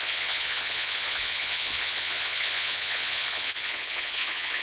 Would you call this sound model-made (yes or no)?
yes